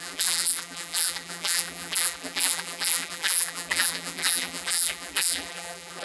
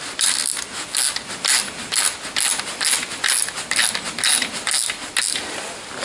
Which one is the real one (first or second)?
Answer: second